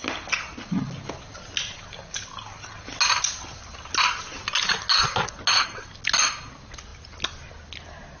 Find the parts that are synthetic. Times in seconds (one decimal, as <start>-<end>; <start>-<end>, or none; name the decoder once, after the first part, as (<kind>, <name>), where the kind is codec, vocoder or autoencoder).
none